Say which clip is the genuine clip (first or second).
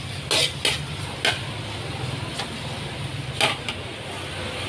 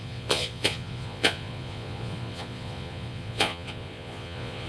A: first